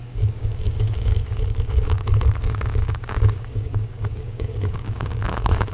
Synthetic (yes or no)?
yes